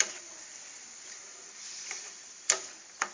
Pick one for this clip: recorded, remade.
remade